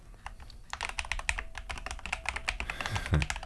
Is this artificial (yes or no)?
no